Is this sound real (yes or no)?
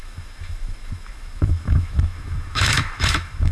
no